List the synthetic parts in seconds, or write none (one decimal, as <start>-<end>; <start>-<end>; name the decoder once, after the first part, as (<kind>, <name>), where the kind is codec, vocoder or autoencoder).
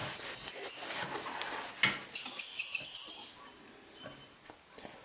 none